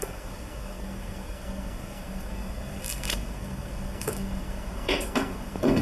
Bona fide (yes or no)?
no